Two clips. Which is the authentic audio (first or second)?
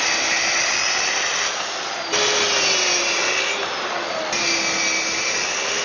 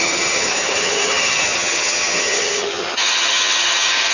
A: first